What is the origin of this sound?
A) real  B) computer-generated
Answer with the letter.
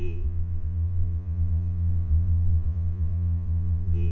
B